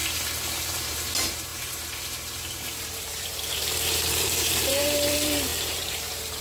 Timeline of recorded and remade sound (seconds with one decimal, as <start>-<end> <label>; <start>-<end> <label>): 0.0-0.8 recorded; 0.8-6.4 remade